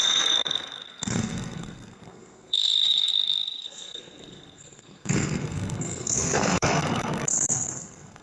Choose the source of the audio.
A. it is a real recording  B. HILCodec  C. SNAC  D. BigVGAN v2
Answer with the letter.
C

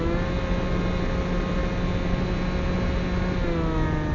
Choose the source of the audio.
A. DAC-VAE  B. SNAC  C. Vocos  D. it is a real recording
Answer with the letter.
D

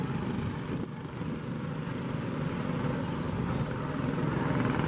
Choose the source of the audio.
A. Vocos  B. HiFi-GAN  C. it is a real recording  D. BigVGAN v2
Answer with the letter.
C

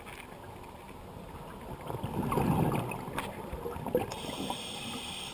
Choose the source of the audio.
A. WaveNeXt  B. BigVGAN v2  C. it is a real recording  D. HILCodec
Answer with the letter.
C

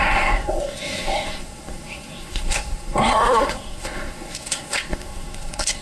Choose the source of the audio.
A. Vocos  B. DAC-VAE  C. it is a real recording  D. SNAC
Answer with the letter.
D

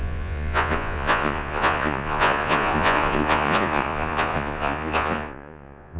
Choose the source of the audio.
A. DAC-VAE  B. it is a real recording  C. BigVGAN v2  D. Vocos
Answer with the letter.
D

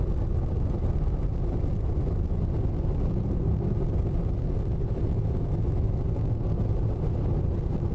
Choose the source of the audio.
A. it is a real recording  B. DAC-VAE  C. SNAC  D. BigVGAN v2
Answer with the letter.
A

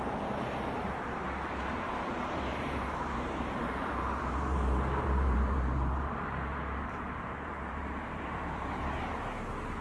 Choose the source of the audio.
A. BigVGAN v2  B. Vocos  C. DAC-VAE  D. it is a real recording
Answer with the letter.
A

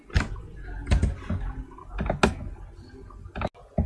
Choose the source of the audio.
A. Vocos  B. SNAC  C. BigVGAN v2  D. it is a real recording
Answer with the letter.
D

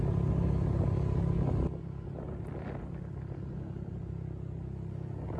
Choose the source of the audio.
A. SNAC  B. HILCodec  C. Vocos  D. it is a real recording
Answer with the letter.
D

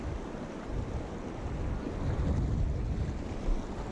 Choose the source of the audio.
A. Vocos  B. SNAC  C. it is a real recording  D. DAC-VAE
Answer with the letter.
C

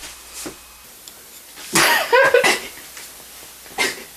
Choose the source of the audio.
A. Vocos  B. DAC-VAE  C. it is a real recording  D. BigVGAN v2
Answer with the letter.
C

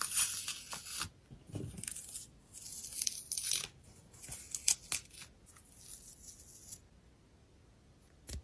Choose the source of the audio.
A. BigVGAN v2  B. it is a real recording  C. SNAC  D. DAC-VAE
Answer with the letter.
B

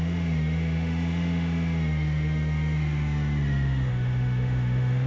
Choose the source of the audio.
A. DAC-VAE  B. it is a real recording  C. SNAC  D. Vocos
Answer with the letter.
A